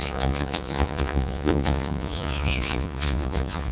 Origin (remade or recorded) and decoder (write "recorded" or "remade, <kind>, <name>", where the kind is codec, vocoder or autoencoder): remade, vocoder, Vocos